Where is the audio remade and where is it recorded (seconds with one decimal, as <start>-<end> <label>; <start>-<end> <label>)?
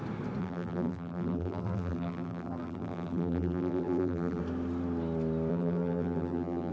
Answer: 0.0-0.4 recorded; 0.4-4.4 remade; 4.4-5.5 recorded; 5.5-6.7 remade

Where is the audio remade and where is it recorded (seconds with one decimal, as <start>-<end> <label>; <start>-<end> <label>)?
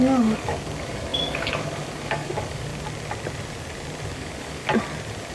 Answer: 0.0-2.7 remade; 2.7-4.1 recorded; 4.1-4.6 remade; 4.6-5.3 recorded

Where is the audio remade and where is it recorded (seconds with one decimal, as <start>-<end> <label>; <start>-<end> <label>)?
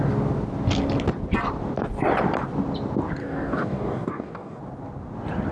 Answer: 0.0-3.2 recorded; 3.2-4.6 remade; 4.6-5.5 recorded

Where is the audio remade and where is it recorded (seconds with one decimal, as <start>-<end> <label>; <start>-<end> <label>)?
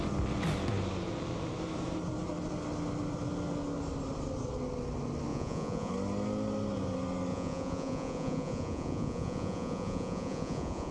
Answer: 0.0-5.3 recorded; 5.3-5.9 remade; 5.9-7.3 recorded; 7.3-10.9 remade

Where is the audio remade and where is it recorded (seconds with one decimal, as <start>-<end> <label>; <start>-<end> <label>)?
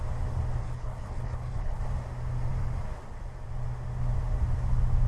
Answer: 0.0-0.6 recorded; 0.6-1.8 remade; 1.8-5.1 recorded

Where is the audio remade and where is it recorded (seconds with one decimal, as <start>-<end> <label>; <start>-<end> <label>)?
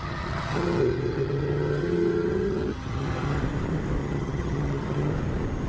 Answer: 0.0-3.4 remade; 3.4-4.0 recorded; 4.0-5.1 remade; 5.1-5.7 recorded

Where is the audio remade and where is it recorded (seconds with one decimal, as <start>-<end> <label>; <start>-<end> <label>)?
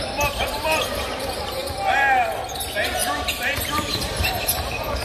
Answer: 0.0-1.6 remade; 1.6-2.6 recorded; 2.6-5.0 remade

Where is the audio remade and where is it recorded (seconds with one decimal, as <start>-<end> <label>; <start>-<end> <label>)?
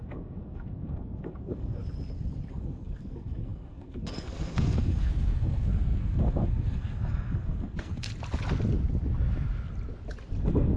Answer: 0.0-1.8 remade; 1.8-2.5 recorded; 2.5-8.1 remade; 8.1-10.4 recorded; 10.4-10.8 remade